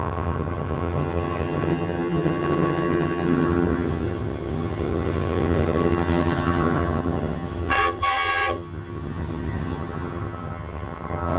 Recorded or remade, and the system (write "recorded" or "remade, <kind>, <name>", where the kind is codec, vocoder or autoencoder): remade, vocoder, HiFi-GAN